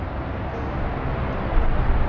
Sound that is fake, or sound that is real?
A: real